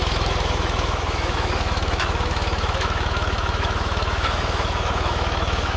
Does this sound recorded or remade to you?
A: remade